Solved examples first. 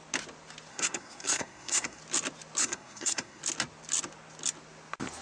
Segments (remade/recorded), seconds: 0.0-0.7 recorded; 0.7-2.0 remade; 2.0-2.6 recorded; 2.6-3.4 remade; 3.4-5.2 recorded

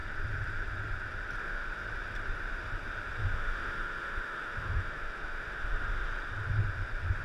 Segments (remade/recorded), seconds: 0.0-1.4 recorded; 1.4-1.8 remade; 1.8-3.2 recorded; 3.2-6.1 remade; 6.1-7.2 recorded

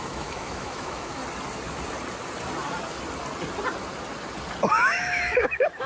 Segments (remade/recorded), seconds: 0.0-1.2 remade; 1.2-4.7 recorded; 4.7-5.9 remade

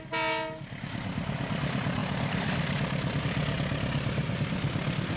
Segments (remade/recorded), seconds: 0.0-2.0 recorded; 2.0-3.2 remade; 3.2-5.2 recorded

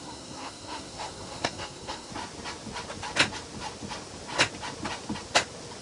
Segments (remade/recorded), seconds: 0.0-2.1 remade; 2.1-5.8 recorded